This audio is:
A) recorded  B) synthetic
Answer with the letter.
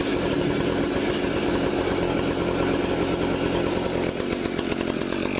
A